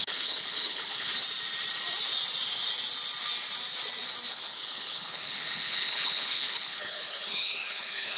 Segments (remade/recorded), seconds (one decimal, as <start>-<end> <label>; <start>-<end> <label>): 0.0-1.1 remade; 1.1-4.3 recorded; 4.3-8.2 remade